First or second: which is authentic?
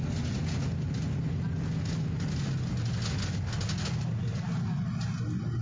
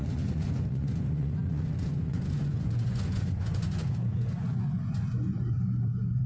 first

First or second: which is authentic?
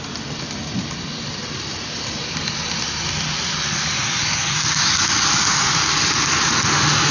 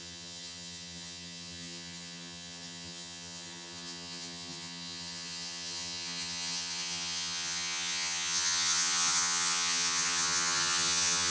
first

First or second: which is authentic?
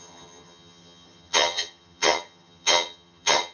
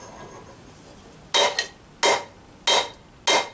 second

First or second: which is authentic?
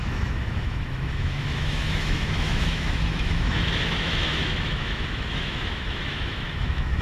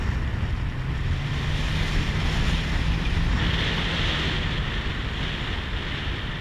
second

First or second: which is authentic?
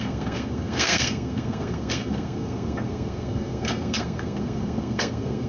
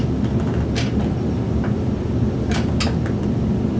second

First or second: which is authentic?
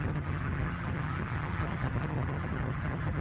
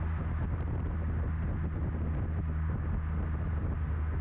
second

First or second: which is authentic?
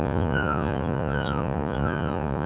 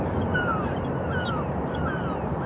second